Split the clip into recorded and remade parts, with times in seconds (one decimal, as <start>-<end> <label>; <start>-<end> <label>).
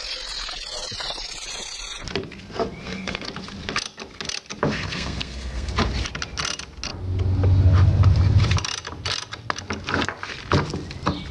0.0-2.8 recorded; 2.8-3.3 remade; 3.3-4.7 recorded; 4.7-5.7 remade; 5.7-11.3 recorded